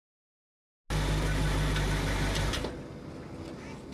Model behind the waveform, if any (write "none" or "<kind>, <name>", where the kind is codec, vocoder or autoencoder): none